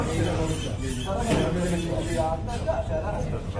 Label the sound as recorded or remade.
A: recorded